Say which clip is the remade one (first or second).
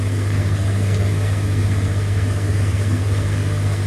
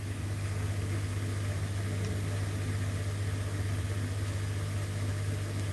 first